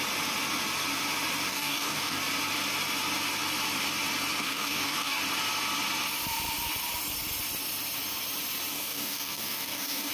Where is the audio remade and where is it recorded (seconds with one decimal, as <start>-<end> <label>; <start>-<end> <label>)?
0.0-1.5 recorded; 1.5-2.2 remade; 2.2-4.4 recorded; 4.4-5.2 remade; 5.2-8.7 recorded; 8.7-10.1 remade